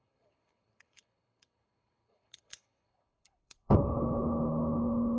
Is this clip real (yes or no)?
no